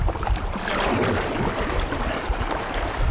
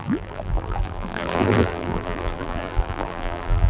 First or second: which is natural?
first